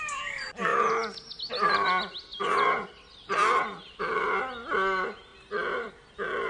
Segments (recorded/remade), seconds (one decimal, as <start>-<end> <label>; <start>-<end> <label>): 0.0-5.3 recorded; 5.3-5.9 remade; 5.9-6.5 recorded

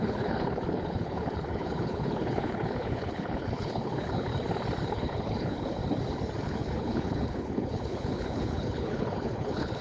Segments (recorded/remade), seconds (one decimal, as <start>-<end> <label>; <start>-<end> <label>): 0.0-4.3 remade; 4.3-4.9 recorded; 4.9-5.8 remade; 5.8-6.4 recorded; 6.4-9.8 remade

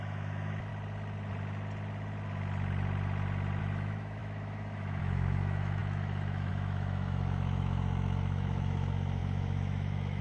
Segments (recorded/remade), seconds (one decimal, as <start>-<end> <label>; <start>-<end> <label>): 0.0-0.7 remade; 0.7-3.6 recorded; 3.6-10.2 remade

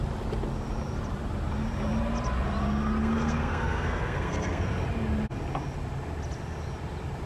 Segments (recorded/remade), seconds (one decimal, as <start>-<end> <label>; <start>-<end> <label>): 0.0-3.0 recorded; 3.0-4.7 remade; 4.7-7.3 recorded

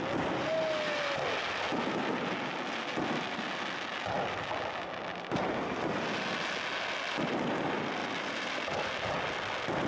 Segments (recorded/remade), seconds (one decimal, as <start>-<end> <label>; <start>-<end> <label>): 0.0-8.0 recorded; 8.0-8.9 remade; 8.9-9.9 recorded